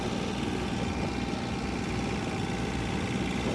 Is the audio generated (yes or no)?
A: no